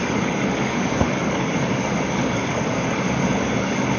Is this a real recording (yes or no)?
no